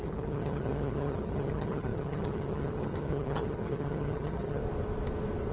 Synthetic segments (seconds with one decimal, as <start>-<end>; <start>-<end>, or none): 0.0-4.6